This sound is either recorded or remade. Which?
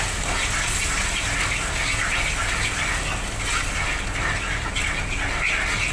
recorded